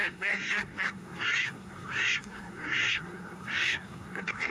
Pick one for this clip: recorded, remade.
remade